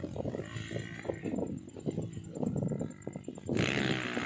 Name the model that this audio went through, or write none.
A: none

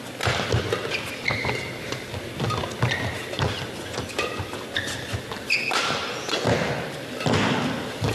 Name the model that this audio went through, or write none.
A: none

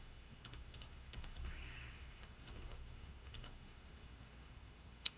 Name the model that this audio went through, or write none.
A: codec, SNAC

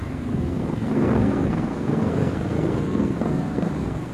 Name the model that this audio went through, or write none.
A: codec, SNAC